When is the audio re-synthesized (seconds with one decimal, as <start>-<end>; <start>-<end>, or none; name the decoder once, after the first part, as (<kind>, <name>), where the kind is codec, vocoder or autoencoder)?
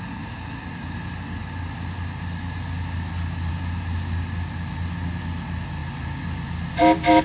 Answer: 5.8-7.2 (vocoder, BigVGAN v2)